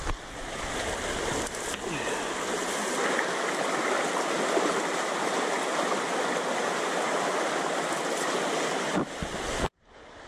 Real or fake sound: real